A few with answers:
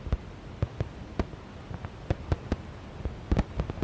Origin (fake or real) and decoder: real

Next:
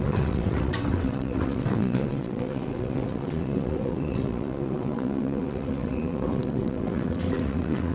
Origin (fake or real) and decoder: fake, vocoder, WaveNeXt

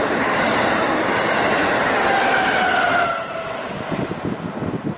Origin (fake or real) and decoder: real